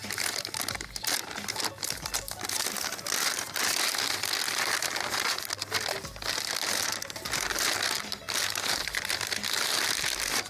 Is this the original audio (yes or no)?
yes